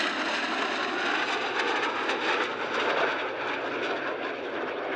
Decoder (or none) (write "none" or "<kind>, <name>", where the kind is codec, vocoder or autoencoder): none